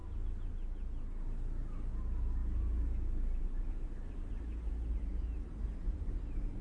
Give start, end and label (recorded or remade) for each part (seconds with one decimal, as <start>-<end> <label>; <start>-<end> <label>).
0.0-6.6 recorded